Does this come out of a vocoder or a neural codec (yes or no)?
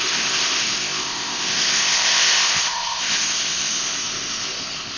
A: yes